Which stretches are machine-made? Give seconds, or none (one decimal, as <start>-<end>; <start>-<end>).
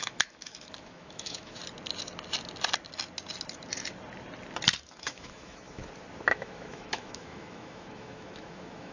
0.0-1.6; 4.8-5.8; 6.3-8.9